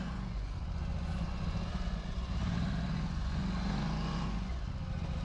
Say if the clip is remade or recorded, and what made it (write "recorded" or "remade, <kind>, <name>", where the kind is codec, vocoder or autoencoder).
remade, vocoder, Vocos